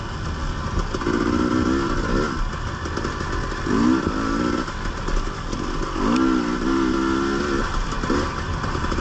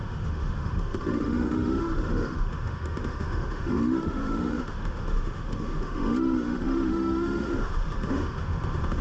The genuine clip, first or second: first